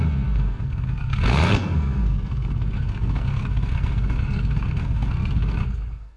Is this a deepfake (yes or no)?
yes